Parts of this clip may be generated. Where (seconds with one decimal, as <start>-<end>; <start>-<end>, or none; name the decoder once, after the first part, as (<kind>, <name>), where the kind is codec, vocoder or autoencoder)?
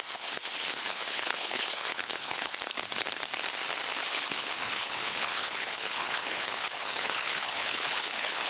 0.0-2.5 (codec, HILCodec); 4.1-8.5